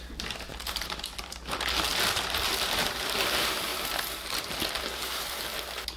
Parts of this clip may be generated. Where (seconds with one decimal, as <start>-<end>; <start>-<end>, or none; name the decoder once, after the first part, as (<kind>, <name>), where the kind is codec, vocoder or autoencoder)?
0.5-1.2 (vocoder, BigVGAN v2); 3.7-4.6